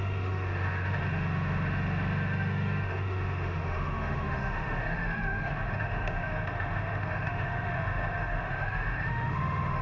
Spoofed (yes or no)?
yes